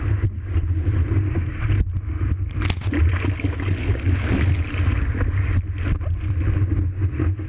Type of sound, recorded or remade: recorded